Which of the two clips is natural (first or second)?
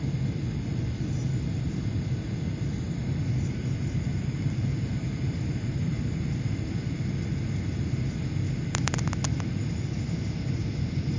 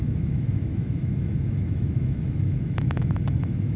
first